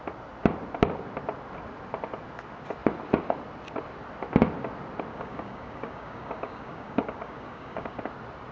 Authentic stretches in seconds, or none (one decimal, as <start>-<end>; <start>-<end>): 0.0-5.1; 8.0-8.5